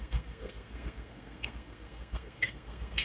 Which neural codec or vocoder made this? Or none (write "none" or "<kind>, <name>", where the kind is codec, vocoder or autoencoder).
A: codec, SNAC